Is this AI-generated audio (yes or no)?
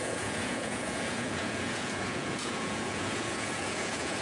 yes